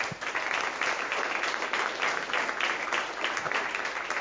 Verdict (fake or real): real